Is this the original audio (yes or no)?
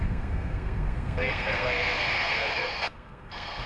no